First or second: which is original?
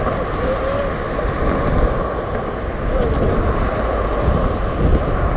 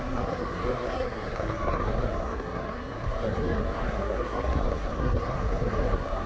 first